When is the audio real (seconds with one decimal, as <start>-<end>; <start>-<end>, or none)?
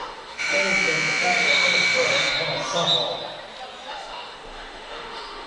0.6-1.2; 2.2-3.9